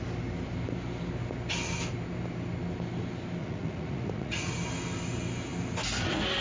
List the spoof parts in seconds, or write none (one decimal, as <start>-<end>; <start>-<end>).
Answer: 3.4-4.5